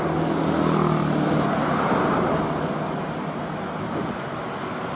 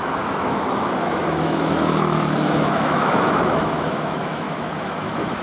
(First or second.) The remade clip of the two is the second